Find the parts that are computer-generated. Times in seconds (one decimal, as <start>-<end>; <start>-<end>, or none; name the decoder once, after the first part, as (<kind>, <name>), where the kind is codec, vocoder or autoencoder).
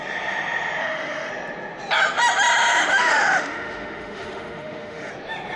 0.8-1.3 (autoencoder, DAC-VAE); 2.9-5.1